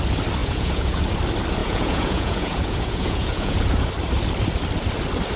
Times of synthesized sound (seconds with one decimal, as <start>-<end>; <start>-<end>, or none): 0.4-1.0; 1.6-3.9